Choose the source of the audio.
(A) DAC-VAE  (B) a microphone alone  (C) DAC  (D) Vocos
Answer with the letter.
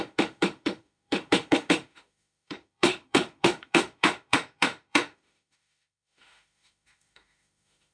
A